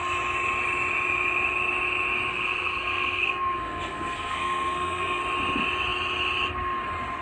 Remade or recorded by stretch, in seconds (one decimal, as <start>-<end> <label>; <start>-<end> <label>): 0.0-2.3 recorded; 2.3-5.2 remade; 5.2-7.2 recorded